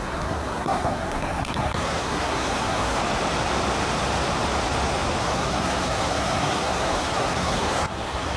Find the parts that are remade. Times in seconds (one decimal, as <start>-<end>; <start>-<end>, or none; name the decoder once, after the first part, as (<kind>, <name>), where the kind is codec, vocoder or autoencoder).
0.0-3.0 (codec, SNAC); 5.2-8.4